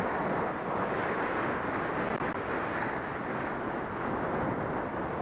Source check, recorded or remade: recorded